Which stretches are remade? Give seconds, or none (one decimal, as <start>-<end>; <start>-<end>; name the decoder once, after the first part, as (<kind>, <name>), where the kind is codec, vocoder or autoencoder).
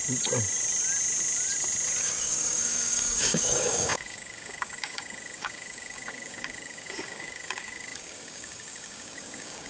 2.0-9.7 (codec, DAC)